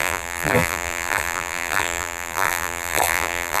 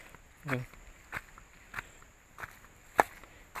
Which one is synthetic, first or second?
first